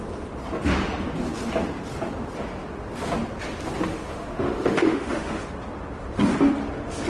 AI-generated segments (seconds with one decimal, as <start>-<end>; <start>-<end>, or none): 3.9-5.5